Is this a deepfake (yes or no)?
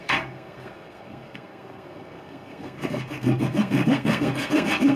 yes